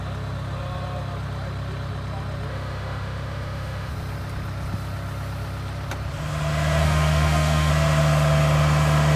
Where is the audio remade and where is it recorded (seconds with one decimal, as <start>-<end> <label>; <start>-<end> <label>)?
0.0-2.5 recorded; 2.5-3.9 remade; 3.9-6.8 recorded; 6.8-7.7 remade; 7.7-9.2 recorded